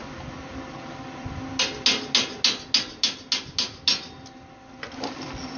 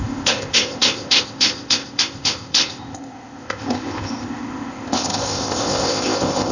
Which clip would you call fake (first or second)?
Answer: second